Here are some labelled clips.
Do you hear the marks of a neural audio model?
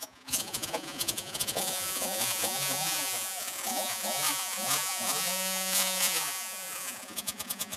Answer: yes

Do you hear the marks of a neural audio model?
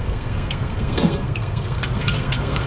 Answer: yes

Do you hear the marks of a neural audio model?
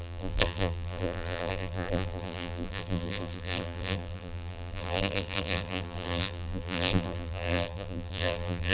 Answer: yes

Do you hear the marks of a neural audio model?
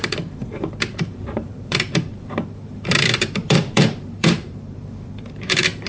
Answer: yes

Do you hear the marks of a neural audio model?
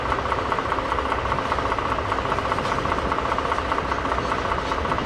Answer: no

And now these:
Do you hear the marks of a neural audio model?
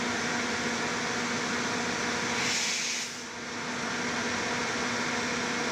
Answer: no